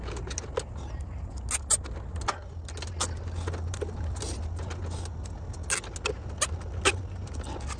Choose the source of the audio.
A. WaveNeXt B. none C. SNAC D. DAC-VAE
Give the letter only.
B